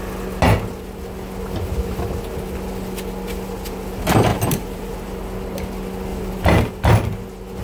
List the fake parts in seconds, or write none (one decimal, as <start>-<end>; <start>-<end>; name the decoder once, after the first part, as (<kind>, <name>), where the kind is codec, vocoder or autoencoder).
4.3-4.9 (vocoder, BigVGAN v2); 6.1-6.7